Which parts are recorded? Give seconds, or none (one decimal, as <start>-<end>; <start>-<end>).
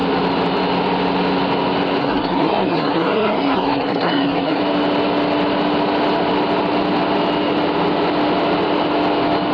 0.0-2.0; 4.6-9.5